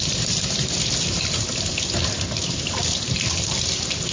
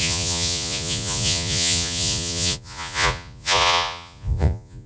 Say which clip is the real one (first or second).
first